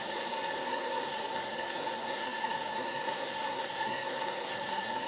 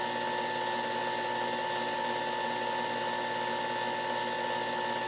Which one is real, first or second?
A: second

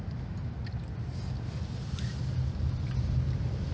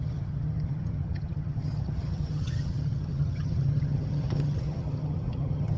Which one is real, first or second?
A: first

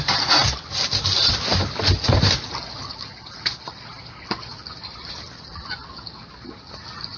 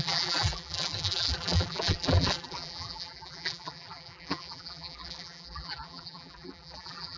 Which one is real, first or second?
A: first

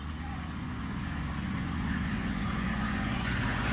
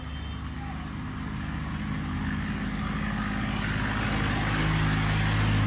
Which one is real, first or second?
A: second